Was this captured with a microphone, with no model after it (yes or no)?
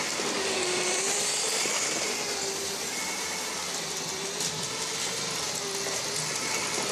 yes